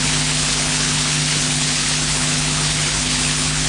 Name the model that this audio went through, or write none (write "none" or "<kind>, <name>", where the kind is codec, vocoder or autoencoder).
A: codec, HILCodec